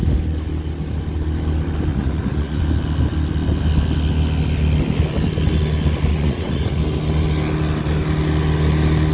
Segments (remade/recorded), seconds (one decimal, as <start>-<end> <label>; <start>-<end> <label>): 0.0-1.9 recorded; 1.9-2.6 remade; 2.6-6.1 recorded; 6.1-6.8 remade; 6.8-9.1 recorded